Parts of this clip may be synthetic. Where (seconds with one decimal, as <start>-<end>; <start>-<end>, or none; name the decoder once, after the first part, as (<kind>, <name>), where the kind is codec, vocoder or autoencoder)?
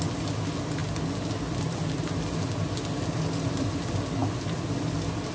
none